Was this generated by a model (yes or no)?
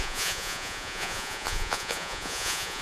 yes